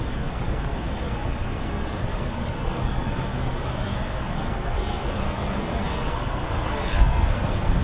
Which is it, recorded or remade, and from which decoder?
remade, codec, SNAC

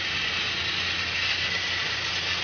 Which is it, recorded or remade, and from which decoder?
recorded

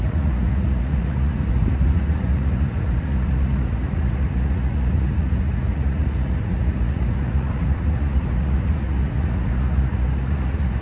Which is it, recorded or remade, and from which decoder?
remade, vocoder, Vocos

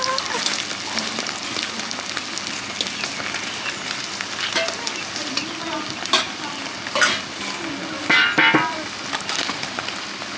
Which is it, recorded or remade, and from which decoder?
recorded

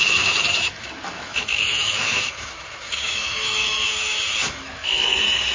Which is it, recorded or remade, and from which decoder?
remade, autoencoder, DAC-VAE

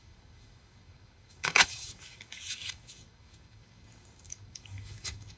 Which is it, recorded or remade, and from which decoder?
remade, codec, DAC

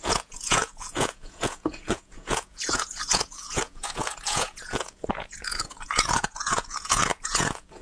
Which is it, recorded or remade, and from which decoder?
remade, vocoder, Vocos